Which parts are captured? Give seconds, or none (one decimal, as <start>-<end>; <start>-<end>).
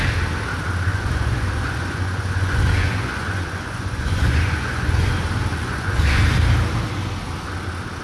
0.0-0.9; 5.1-5.5; 6.2-8.0